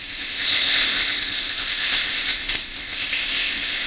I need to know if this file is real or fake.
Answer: fake